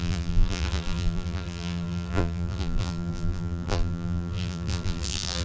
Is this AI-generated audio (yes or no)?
yes